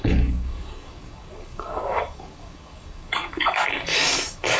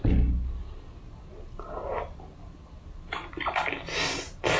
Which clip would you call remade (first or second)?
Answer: first